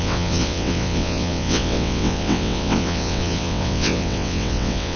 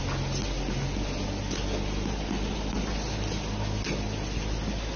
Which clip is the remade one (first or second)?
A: first